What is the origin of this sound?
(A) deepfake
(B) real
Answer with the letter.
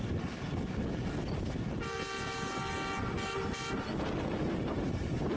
B